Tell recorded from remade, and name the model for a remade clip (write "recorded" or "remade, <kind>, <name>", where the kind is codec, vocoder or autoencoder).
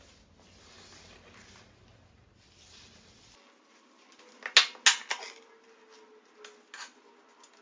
recorded